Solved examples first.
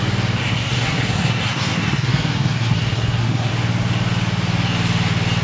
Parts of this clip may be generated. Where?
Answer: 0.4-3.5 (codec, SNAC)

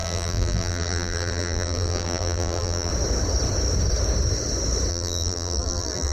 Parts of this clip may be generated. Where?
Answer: 0.0-2.9 (vocoder, BigVGAN v2); 4.9-6.1

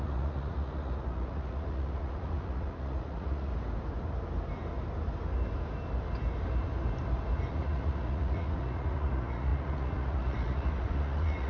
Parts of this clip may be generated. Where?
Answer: 0.0-3.5 (vocoder, Vocos); 7.5-11.5

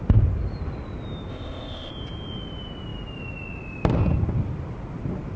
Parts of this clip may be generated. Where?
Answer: 1.3-1.9 (codec, ZipCodec)

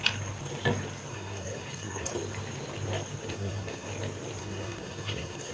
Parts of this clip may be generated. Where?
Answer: 1.1-2.1 (codec, SNAC); 3.3-3.9; 4.4-5.5